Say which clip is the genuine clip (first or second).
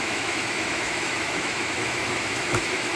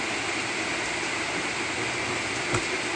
second